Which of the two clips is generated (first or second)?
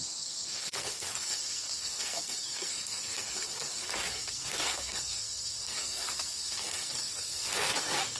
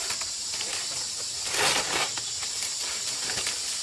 first